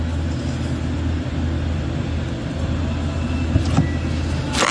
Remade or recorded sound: recorded